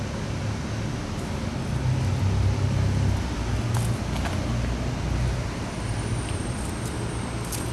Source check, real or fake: real